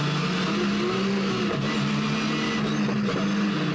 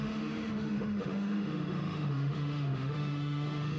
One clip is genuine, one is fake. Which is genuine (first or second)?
first